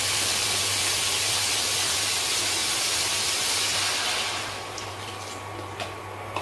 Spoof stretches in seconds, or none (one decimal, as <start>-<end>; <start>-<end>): none